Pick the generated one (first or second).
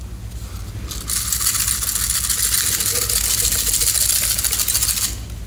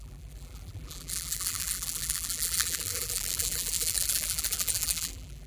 second